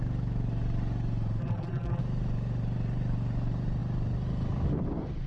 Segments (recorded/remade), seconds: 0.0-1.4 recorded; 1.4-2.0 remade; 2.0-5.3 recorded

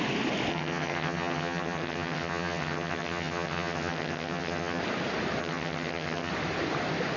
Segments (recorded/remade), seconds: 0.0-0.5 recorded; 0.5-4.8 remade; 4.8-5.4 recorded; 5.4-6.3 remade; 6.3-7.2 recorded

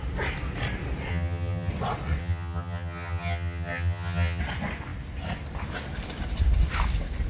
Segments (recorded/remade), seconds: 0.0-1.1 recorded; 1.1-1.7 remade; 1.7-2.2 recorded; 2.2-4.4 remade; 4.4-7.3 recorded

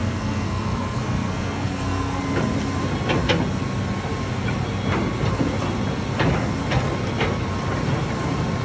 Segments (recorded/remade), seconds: 0.0-2.2 remade; 2.2-8.6 recorded

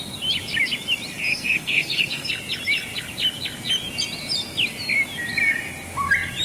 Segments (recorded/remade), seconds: 0.0-1.3 recorded; 1.3-2.3 remade; 2.3-6.4 recorded

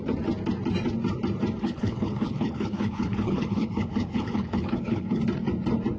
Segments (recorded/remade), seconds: 0.0-1.6 recorded; 1.6-5.2 remade; 5.2-6.0 recorded